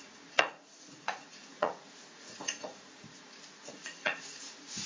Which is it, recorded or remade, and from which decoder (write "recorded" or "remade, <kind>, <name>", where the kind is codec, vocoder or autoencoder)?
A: remade, vocoder, Vocos